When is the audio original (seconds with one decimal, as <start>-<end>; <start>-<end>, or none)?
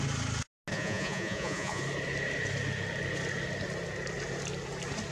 0.0-0.7; 1.8-5.1